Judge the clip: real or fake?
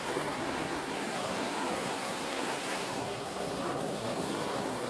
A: fake